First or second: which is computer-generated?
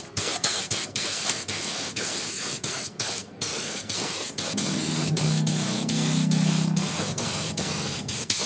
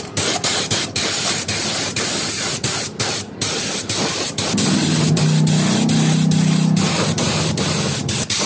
first